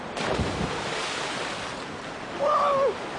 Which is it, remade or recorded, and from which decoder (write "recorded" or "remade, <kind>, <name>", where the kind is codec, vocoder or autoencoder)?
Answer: recorded